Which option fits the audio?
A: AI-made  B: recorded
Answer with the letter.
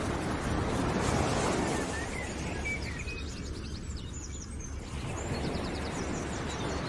B